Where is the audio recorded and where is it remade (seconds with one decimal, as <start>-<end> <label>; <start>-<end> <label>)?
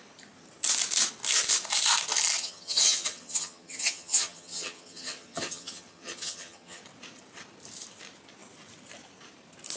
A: 0.0-2.4 recorded; 2.4-6.8 remade; 6.8-9.8 recorded